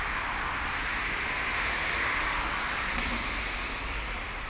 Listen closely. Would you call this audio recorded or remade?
recorded